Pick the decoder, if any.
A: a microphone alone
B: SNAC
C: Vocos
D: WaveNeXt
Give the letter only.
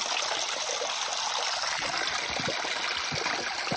A